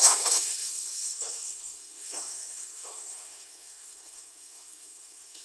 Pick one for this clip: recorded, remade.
remade